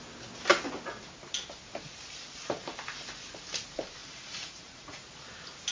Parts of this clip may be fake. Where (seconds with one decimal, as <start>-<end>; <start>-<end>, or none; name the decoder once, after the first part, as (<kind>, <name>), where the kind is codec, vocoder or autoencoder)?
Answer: 4.0-5.0 (vocoder, Vocos)